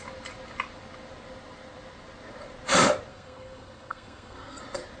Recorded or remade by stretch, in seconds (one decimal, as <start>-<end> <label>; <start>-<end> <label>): 0.0-3.1 recorded; 3.1-4.6 remade; 4.6-5.0 recorded